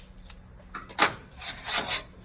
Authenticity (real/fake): real